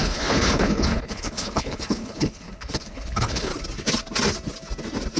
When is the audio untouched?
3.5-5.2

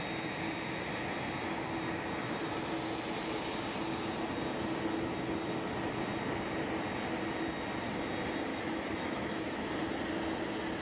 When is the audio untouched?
0.0-8.5; 9.7-10.8